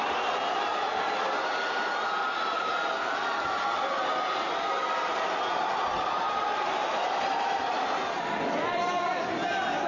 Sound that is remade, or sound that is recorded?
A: recorded